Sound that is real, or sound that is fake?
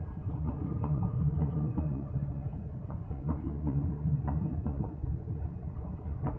fake